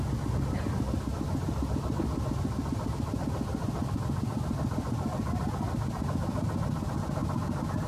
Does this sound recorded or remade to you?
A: recorded